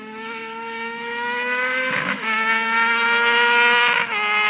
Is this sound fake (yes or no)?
yes